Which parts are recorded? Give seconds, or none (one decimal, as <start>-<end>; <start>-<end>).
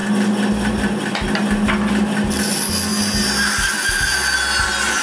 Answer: 0.0-5.0